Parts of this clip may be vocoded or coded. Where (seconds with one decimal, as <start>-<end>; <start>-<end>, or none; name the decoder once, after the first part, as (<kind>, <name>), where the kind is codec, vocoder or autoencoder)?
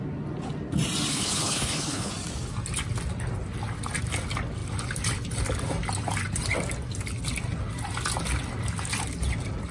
1.1-2.1 (codec, HILCodec)